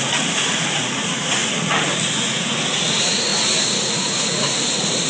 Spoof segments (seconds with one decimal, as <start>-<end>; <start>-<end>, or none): 0.0-5.1